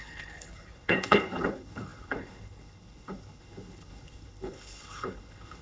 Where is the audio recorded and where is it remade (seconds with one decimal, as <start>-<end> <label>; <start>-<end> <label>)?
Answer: 0.0-5.6 remade